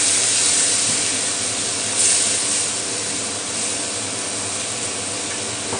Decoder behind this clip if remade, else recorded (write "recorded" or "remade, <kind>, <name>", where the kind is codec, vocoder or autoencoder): recorded